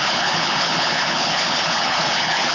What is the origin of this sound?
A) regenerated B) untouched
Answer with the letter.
A